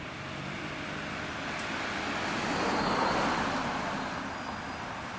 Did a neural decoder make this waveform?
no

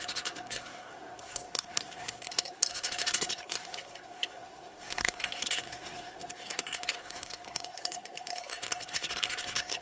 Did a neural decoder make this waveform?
yes